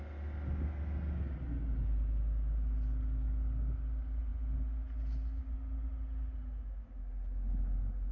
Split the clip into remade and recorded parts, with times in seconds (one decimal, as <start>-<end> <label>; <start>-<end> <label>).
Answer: 0.0-8.1 recorded